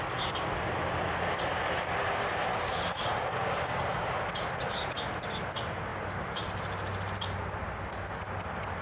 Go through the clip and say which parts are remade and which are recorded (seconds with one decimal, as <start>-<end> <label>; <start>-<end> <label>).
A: 0.0-2.5 recorded; 2.5-4.1 remade; 4.1-8.8 recorded